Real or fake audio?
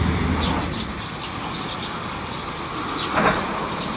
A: real